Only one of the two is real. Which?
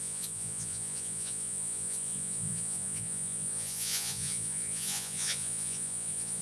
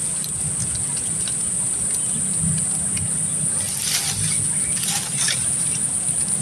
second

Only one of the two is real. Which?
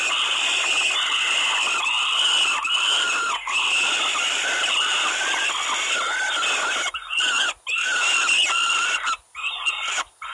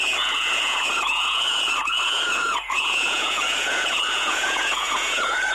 first